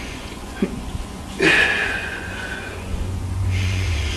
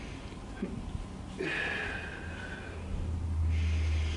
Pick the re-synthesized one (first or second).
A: first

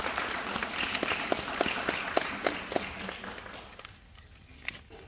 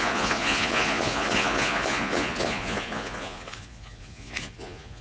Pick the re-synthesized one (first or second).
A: second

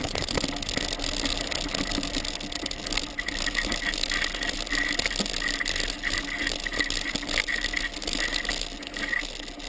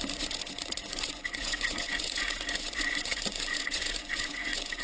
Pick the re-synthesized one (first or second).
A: second